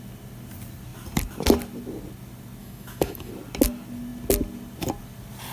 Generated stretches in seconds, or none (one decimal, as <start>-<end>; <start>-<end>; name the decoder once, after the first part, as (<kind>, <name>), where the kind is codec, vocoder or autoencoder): 2.6-3.3 (autoencoder, DAC-VAE)